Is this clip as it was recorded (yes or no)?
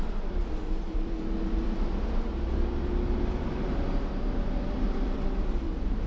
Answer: no